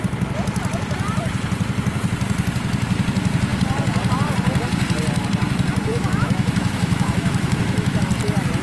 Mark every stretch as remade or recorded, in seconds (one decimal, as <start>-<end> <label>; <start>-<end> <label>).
0.0-5.9 recorded; 5.9-8.0 remade; 8.0-8.6 recorded